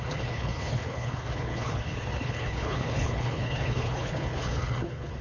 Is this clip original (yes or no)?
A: no